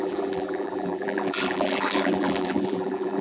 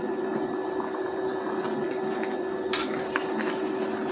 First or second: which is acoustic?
second